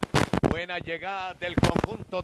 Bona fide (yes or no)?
yes